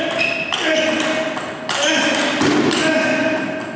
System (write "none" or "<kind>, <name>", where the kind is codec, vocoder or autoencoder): none